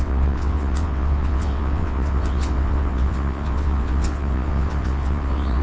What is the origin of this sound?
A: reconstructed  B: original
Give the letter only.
A